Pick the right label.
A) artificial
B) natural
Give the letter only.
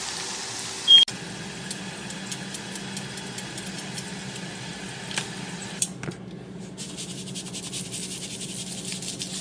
B